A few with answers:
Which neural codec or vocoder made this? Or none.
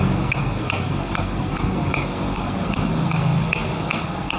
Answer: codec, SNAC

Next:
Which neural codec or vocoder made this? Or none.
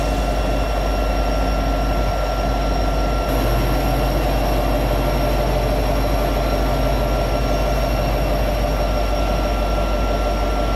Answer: none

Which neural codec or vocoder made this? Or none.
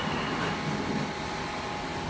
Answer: none